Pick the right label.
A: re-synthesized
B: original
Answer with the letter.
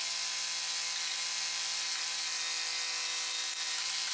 B